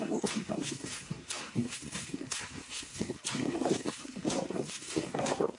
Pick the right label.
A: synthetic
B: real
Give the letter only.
A